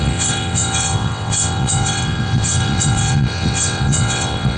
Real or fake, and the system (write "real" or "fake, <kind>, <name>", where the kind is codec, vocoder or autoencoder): fake, vocoder, WaveNeXt